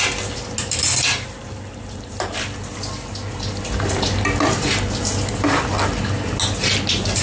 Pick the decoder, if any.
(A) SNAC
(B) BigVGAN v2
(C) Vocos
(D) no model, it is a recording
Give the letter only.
D